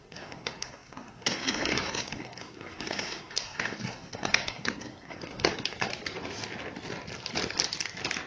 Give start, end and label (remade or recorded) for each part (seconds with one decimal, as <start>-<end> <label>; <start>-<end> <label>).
0.0-5.9 remade; 5.9-8.3 recorded